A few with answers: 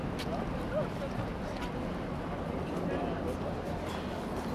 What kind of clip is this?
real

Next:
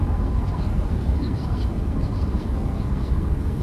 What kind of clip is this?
fake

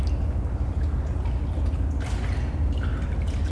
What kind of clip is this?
real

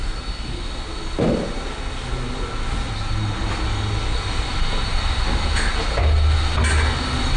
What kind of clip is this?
real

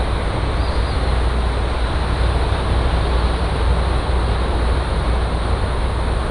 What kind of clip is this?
real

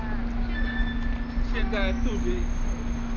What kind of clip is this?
real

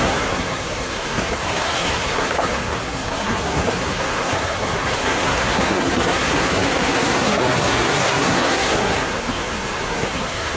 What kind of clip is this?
fake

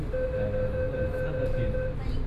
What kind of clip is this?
real